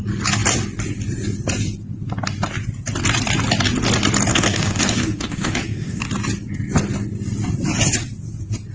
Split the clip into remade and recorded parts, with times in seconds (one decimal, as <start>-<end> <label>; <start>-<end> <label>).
0.0-4.3 recorded; 4.3-6.0 remade; 6.0-8.7 recorded

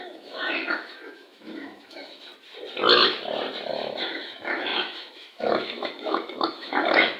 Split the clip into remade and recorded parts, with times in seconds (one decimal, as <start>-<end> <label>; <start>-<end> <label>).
0.0-2.3 remade; 2.3-3.7 recorded; 3.7-7.2 remade